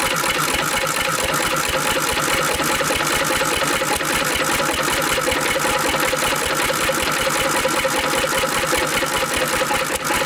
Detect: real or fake real